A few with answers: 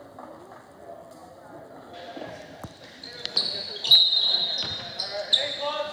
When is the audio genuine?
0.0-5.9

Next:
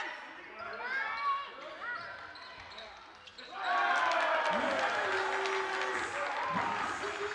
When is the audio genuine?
0.0-7.3